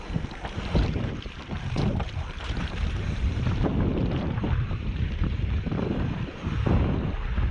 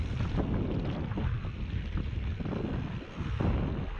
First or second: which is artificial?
first